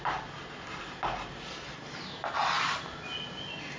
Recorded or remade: recorded